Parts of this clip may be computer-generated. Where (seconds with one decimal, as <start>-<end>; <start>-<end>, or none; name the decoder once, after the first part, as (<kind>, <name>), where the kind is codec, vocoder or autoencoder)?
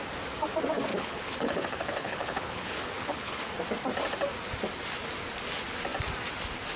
0.9-3.5 (codec, HILCodec)